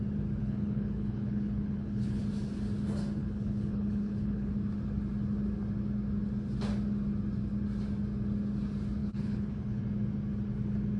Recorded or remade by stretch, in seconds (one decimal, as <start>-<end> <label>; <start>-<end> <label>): 0.0-0.4 recorded; 0.4-2.2 remade; 2.2-3.2 recorded; 3.2-4.5 remade; 4.5-9.0 recorded; 9.0-9.8 remade; 9.8-11.0 recorded